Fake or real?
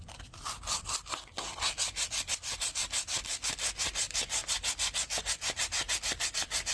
real